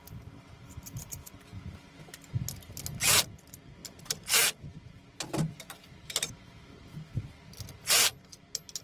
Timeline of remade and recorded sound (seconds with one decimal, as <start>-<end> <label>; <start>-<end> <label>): 0.0-1.5 recorded; 1.5-2.0 remade; 2.0-3.8 recorded; 3.8-6.7 remade; 6.7-8.8 recorded